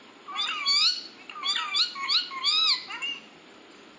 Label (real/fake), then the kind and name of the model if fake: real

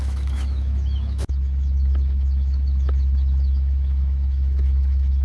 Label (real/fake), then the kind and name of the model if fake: fake, autoencoder, DAC-VAE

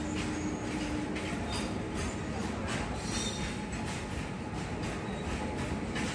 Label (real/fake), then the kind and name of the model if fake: real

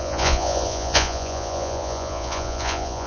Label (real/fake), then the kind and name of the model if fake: fake, vocoder, Vocos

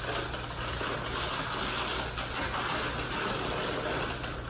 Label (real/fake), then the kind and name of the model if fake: real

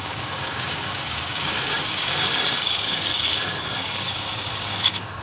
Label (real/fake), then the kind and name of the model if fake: fake, codec, DAC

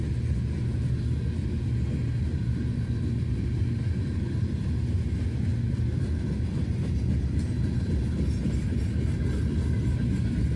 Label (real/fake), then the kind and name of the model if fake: real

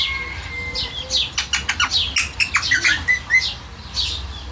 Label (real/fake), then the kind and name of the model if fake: real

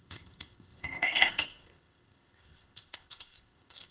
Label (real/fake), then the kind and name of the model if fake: fake, codec, ZipCodec